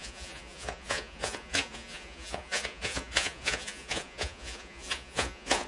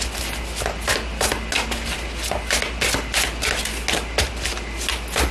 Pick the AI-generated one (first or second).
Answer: first